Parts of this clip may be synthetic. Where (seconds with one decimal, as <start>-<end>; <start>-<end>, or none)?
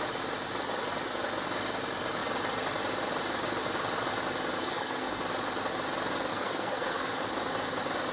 4.6-5.2; 6.3-7.2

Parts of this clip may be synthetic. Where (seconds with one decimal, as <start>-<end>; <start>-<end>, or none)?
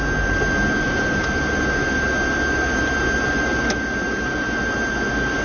none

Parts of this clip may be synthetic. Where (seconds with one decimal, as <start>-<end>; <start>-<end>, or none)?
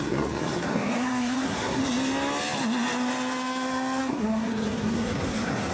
0.0-1.8; 4.0-5.7